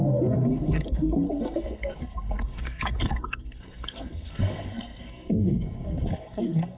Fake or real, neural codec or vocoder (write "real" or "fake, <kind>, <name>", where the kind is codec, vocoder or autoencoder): fake, codec, SNAC